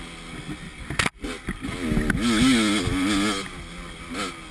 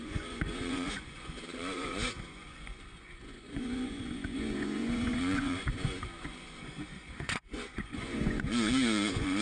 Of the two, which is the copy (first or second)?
second